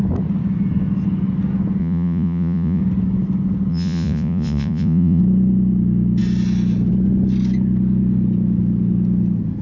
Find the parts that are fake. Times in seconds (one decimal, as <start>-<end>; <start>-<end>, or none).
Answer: 1.8-2.8; 3.7-5.2